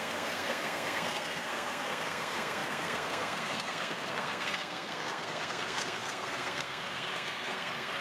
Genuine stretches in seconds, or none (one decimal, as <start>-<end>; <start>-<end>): none